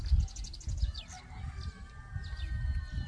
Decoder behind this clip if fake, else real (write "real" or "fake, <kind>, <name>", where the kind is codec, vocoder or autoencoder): real